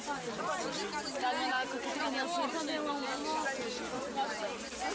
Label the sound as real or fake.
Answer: real